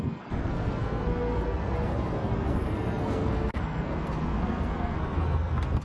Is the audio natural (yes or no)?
no